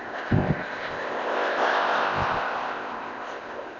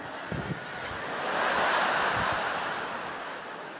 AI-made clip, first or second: first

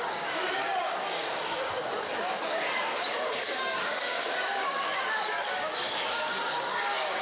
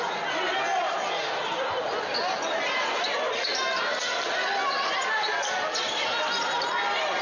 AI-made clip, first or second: first